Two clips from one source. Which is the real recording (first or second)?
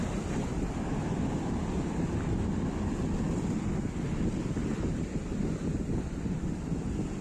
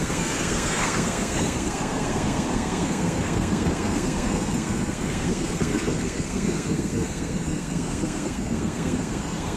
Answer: first